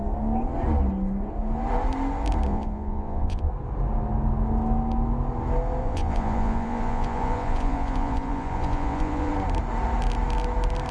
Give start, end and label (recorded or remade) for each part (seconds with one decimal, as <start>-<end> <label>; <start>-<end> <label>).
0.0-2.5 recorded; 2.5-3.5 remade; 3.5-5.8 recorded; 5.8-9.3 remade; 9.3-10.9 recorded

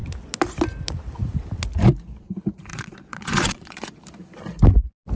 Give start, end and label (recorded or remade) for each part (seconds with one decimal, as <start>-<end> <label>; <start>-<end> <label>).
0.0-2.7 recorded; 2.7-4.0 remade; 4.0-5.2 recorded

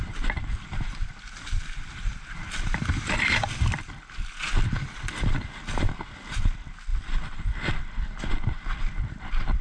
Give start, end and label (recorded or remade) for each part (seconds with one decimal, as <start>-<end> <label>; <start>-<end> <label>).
0.0-9.6 recorded